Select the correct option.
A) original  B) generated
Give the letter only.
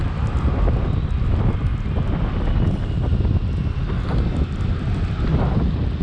A